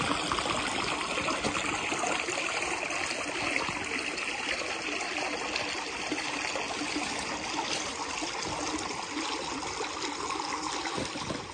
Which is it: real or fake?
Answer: real